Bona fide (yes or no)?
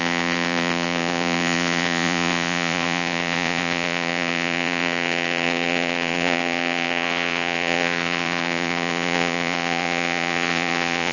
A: no